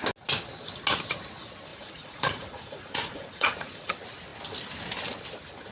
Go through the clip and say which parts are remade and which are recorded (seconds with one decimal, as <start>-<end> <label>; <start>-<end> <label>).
0.0-1.7 recorded; 1.7-3.9 remade; 3.9-5.7 recorded